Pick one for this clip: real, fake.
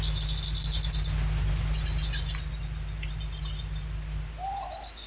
real